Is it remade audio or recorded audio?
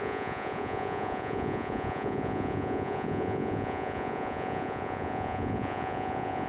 remade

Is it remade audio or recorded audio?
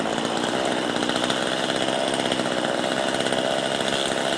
recorded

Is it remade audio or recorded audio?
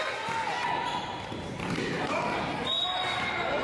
recorded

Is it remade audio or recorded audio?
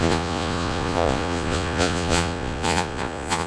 remade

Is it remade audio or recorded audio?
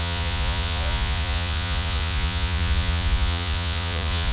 remade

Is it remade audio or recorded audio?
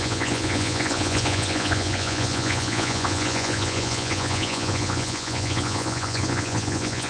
remade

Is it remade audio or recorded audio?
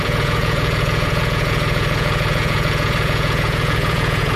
remade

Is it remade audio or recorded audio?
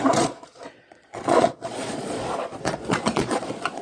remade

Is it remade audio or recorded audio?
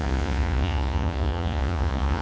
remade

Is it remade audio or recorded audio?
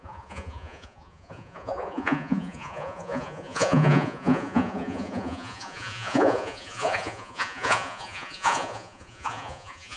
remade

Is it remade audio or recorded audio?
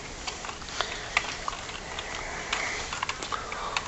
recorded